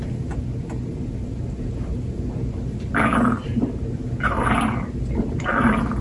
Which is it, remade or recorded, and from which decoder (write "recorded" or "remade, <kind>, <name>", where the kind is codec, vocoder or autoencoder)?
recorded